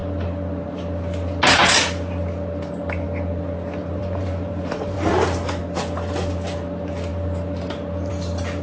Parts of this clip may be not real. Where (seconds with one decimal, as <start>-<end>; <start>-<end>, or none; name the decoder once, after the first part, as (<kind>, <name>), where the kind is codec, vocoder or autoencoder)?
3.8-5.1 (vocoder, BigVGAN v2)